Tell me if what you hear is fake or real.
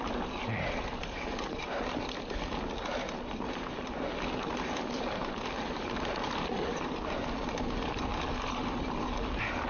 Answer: real